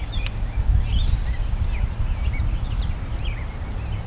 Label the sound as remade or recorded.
recorded